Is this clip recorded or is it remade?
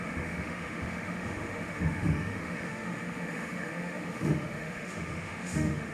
remade